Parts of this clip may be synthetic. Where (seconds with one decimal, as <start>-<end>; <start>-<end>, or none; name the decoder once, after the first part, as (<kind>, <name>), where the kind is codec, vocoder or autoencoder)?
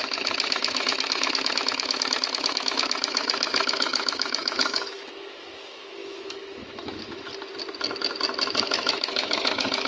0.5-7.3 (autoencoder, DAC-VAE); 8.5-9.9